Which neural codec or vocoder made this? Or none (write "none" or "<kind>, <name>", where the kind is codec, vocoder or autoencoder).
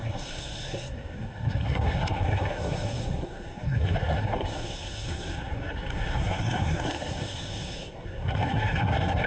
codec, SNAC